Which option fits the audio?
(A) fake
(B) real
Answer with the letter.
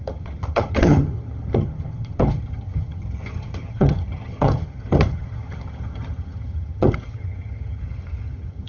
A